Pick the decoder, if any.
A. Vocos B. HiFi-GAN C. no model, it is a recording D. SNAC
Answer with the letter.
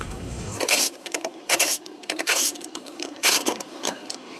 D